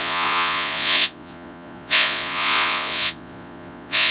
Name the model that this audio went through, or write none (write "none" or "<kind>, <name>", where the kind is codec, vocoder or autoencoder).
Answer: vocoder, Vocos